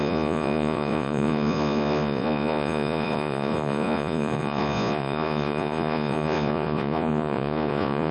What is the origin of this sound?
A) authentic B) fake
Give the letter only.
B